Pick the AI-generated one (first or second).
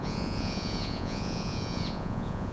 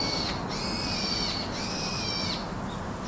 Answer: first